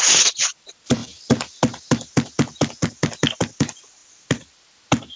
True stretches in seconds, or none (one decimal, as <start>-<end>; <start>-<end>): 0.0-5.2